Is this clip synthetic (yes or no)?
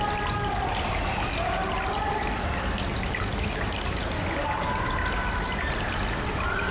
no